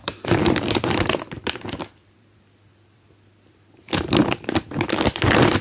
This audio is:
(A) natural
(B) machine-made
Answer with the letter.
B